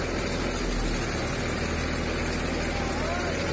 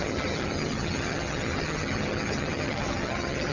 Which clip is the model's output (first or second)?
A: second